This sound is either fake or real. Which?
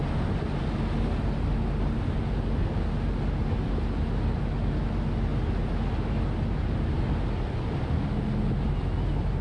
real